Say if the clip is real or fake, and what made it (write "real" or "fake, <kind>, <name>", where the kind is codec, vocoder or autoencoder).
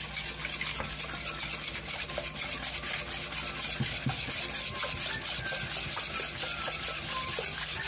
real